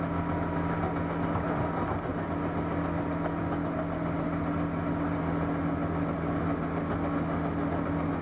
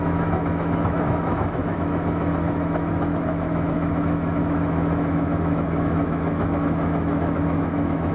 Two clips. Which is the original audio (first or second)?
first